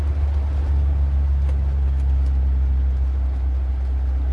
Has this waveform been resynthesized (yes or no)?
no